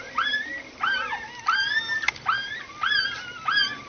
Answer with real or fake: real